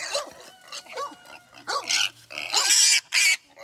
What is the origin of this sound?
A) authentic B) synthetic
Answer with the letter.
A